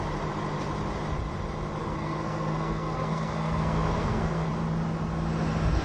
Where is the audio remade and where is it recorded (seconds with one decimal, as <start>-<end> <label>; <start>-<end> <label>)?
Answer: 0.0-1.8 recorded; 1.8-4.5 remade; 4.5-5.8 recorded